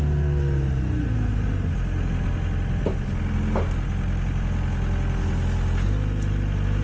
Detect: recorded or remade recorded